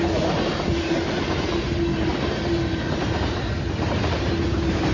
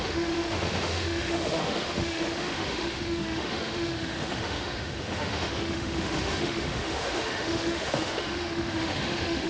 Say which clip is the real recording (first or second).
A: first